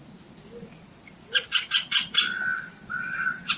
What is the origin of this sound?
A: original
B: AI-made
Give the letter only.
A